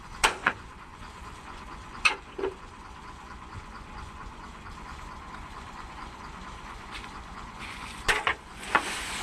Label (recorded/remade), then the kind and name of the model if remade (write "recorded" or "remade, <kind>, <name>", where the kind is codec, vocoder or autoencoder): remade, vocoder, Vocos